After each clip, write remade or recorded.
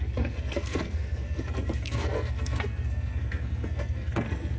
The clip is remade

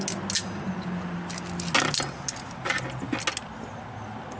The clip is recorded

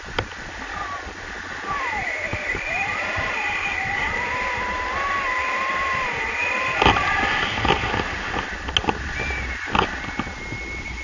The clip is recorded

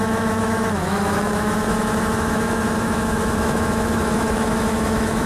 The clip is remade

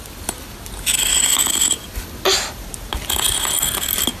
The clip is recorded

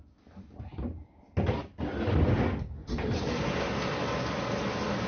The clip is recorded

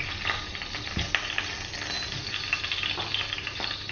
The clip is recorded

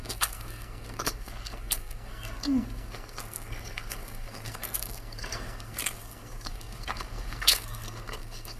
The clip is remade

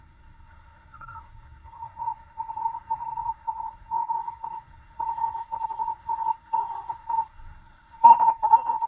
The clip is remade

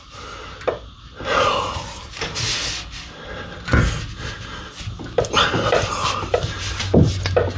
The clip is recorded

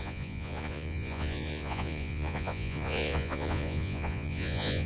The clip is remade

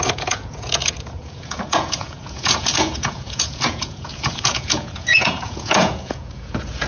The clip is remade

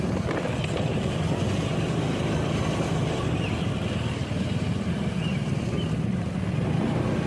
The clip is remade